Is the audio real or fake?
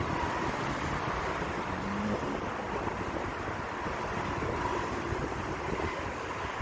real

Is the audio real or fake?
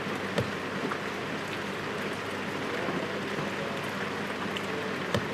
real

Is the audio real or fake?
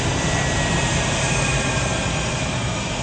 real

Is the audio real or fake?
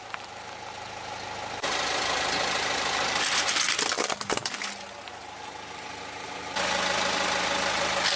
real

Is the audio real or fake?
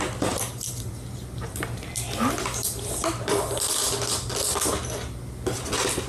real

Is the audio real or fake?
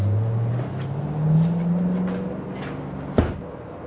real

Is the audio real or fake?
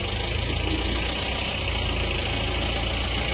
real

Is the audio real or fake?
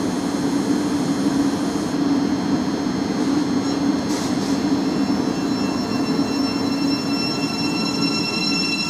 real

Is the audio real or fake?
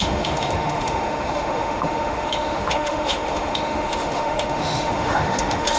fake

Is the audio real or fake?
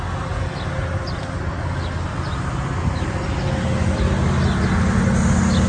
real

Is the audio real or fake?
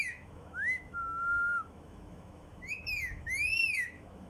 fake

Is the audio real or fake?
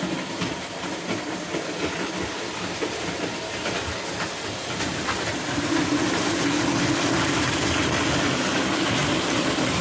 real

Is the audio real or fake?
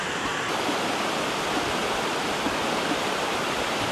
real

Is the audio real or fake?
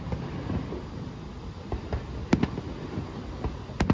real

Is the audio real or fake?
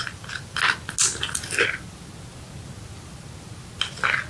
real